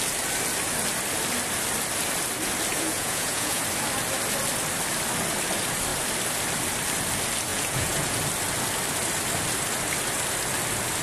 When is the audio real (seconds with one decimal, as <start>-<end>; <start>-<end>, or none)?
0.0-2.7; 3.6-7.5; 8.2-11.0